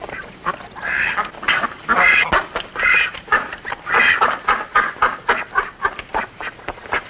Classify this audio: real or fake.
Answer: real